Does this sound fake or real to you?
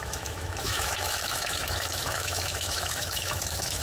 fake